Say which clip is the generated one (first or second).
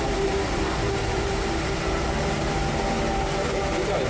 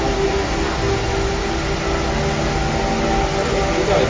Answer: first